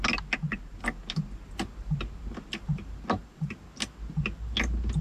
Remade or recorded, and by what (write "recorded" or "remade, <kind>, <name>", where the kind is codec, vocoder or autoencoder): recorded